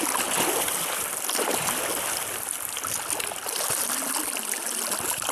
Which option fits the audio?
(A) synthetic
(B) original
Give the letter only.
B